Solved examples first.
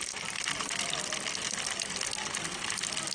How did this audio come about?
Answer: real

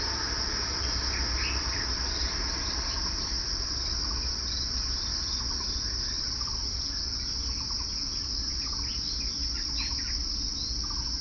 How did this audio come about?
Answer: real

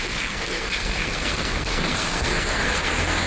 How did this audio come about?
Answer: fake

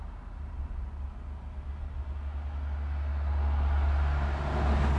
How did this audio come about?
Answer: real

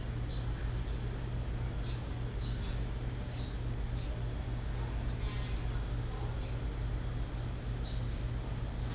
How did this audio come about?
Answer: real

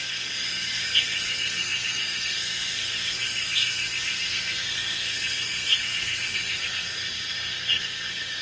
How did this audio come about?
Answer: fake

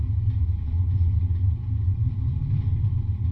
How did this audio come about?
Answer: real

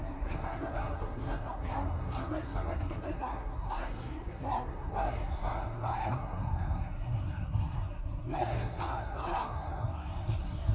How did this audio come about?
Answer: fake